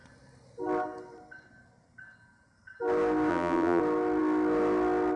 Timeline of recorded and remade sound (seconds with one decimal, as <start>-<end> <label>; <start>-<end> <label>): 0.0-3.3 recorded; 3.3-3.8 remade; 3.8-5.2 recorded